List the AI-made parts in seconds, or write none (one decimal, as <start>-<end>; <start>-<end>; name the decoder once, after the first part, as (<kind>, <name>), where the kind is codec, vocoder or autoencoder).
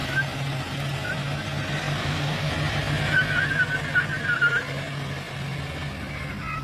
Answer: 2.0-2.5 (codec, DAC)